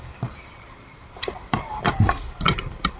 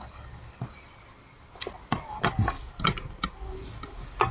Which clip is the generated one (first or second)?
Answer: first